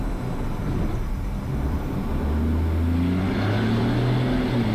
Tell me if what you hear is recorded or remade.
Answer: recorded